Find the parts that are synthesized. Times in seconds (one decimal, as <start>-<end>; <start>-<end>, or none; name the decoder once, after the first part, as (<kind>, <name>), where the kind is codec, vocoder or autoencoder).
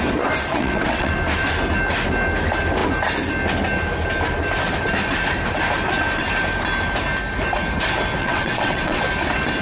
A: 0.5-1.1 (vocoder, WaveNeXt); 8.2-9.0